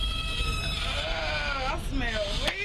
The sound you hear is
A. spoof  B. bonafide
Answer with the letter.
B